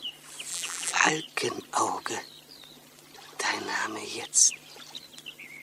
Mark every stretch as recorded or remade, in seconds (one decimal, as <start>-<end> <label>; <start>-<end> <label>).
0.0-0.5 recorded; 0.5-1.1 remade; 1.1-5.6 recorded